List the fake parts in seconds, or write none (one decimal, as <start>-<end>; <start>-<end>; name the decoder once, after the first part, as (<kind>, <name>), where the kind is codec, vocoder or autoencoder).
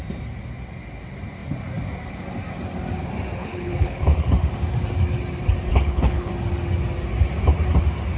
3.4-4.3 (codec, HILCodec); 5.7-6.3